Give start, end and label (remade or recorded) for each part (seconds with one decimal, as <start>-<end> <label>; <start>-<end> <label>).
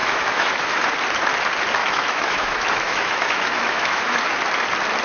0.0-0.9 remade; 0.9-1.8 recorded; 1.8-4.2 remade; 4.2-5.0 recorded